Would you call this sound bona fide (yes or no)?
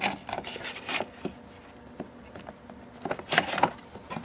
yes